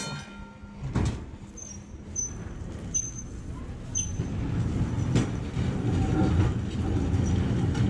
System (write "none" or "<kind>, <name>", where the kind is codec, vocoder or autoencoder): none